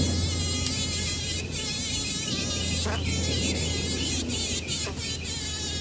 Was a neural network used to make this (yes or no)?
no